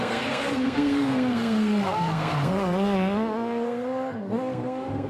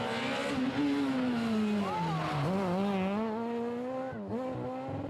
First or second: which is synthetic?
first